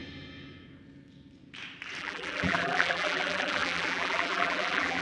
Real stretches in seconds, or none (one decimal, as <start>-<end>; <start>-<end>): 0.0-2.0